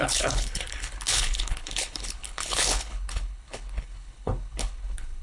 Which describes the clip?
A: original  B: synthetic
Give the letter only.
B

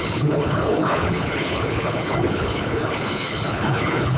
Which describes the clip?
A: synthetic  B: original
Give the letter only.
A